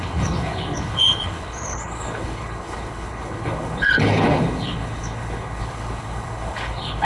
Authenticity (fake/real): fake